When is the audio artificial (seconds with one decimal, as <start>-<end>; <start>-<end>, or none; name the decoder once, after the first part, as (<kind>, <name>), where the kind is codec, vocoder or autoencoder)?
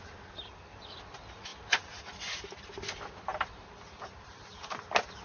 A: none